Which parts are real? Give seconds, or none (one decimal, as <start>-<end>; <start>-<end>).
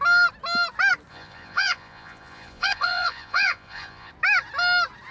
0.0-1.1; 4.1-5.1